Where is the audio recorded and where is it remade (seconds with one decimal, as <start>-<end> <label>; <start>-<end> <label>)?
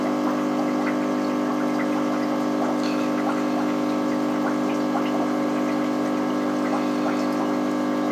0.0-8.1 recorded